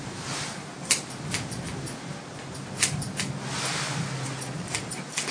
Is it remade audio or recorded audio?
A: recorded